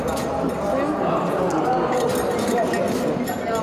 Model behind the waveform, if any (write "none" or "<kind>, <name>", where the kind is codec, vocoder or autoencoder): none